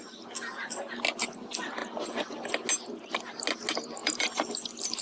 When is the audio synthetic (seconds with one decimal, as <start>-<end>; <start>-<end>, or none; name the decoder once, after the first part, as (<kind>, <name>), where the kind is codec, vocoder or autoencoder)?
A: 4.0-4.5 (vocoder, BigVGAN v2)